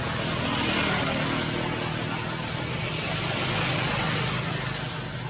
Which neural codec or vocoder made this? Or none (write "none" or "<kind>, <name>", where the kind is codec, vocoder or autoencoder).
none